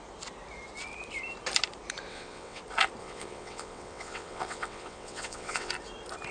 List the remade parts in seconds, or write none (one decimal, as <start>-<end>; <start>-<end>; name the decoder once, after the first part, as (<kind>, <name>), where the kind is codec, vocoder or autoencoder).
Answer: 2.1-2.6 (vocoder, WaveNeXt); 3.0-5.7